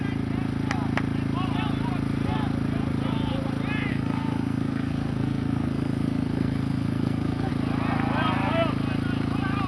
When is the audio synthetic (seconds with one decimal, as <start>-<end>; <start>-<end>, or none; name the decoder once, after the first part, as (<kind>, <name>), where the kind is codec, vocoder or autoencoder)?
3.9-7.5 (codec, SNAC)